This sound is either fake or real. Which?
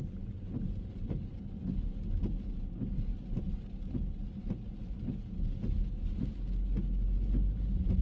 real